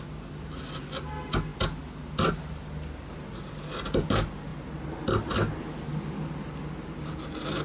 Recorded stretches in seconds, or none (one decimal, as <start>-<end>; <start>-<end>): 0.0-7.6